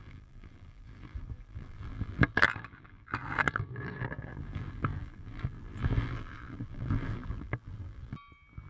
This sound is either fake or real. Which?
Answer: fake